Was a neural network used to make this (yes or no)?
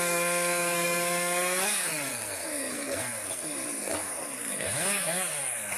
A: yes